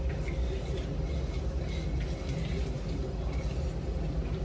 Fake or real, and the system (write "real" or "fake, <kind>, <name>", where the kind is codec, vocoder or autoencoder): real